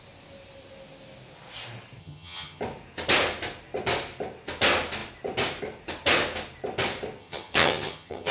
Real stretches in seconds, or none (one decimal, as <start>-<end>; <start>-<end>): 0.0-2.0; 2.6-7.2